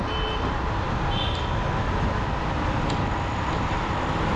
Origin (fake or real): real